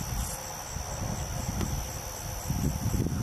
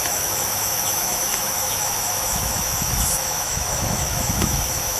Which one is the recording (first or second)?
first